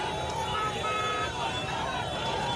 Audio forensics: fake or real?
fake